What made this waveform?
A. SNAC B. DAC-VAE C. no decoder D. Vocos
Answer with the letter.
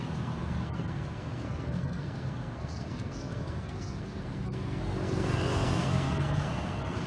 A